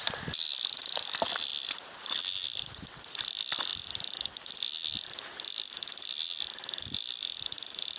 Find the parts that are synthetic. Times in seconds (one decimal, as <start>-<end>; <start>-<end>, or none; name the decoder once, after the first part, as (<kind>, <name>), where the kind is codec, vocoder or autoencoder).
none